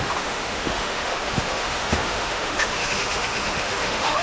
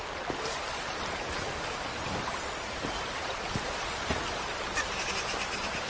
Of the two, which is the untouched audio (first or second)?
second